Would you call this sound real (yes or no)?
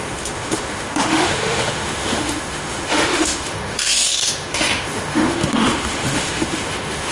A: no